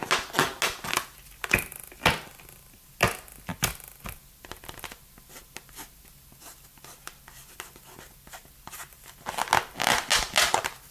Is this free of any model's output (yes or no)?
yes